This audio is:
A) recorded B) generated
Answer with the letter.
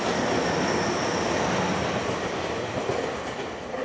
A